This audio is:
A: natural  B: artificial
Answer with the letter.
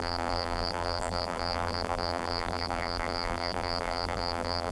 B